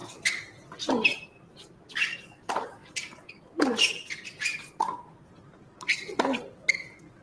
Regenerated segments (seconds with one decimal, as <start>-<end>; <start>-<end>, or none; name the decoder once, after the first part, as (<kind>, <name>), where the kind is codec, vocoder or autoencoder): none